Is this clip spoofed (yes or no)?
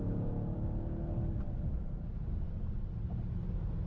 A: no